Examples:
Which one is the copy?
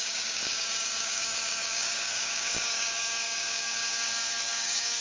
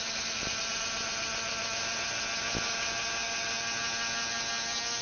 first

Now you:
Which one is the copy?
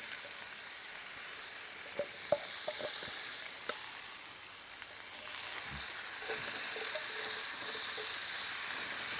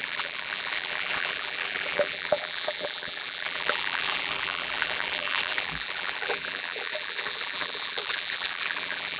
second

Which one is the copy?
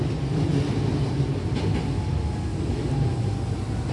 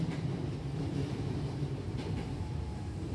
second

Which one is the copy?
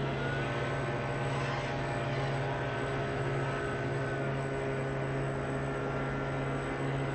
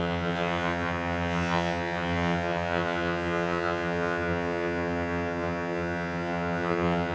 second